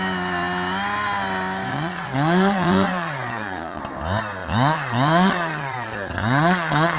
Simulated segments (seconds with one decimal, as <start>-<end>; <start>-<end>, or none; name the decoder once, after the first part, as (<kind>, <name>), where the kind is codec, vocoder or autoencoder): 1.7-3.8 (vocoder, Vocos); 4.4-7.0